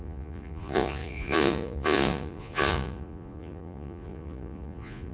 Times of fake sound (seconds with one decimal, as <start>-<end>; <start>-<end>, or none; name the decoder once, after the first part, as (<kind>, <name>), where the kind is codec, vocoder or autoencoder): 0.0-5.1 (vocoder, Vocos)